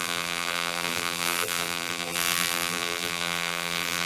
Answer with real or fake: fake